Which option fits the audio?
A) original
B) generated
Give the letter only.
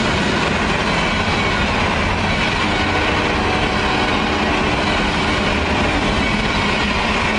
A